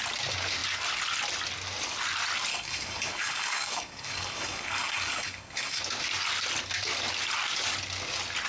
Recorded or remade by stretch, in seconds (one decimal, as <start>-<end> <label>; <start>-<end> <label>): 0.0-2.5 recorded; 2.5-5.8 remade; 5.8-8.5 recorded